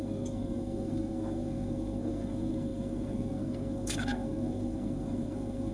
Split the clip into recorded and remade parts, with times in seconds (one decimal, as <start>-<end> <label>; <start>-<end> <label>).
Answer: 0.0-5.7 remade